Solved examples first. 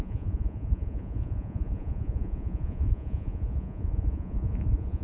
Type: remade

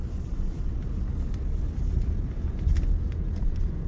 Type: recorded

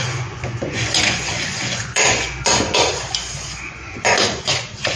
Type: remade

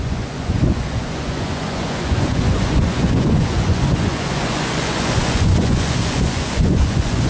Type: remade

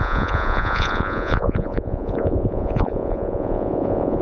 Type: remade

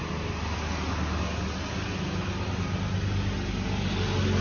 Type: recorded